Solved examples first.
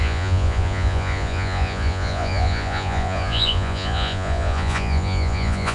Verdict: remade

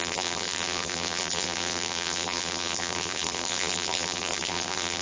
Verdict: remade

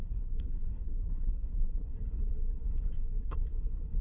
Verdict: remade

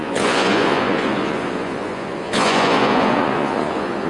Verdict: remade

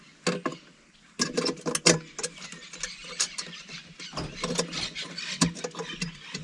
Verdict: recorded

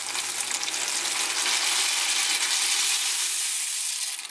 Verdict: recorded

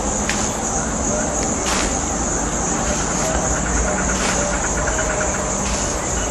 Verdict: recorded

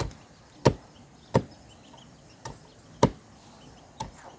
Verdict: recorded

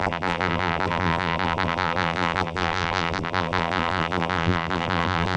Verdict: remade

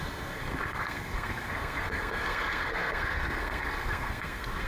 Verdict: remade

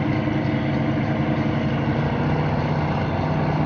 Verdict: recorded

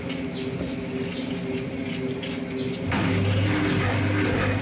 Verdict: recorded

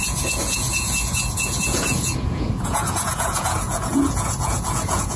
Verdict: remade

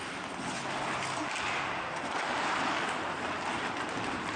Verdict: recorded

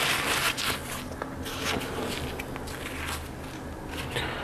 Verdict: recorded